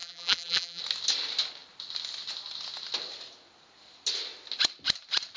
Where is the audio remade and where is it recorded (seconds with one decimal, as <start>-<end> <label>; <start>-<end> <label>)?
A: 0.0-0.8 remade; 0.8-5.4 recorded